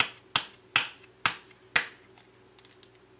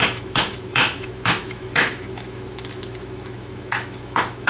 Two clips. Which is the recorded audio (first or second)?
first